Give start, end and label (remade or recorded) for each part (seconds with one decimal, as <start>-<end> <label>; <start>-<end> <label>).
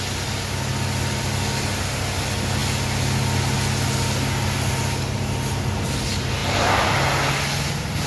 0.0-8.1 recorded